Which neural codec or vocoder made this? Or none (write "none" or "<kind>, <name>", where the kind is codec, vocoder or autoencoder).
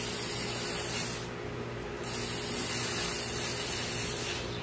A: none